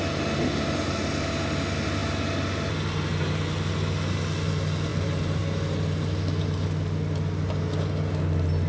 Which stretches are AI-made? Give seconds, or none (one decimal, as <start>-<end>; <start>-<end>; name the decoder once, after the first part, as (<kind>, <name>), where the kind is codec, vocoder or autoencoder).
4.9-5.4 (vocoder, BigVGAN v2)